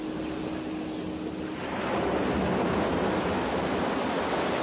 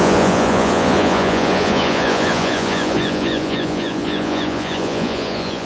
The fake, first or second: second